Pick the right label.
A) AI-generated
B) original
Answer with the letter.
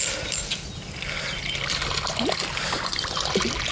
B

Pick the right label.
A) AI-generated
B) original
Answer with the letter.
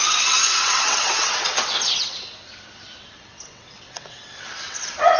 A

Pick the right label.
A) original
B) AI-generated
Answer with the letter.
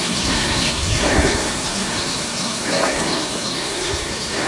B